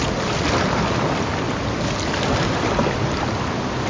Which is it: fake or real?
real